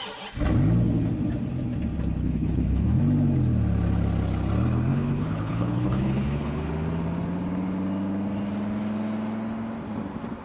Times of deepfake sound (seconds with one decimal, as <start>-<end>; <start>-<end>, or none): 2.2-3.0; 4.9-6.7